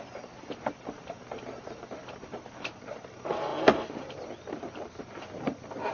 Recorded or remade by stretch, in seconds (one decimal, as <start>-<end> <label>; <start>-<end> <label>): 0.0-5.9 recorded